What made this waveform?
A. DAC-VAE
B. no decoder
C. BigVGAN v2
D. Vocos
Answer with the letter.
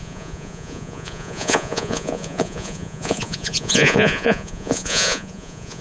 D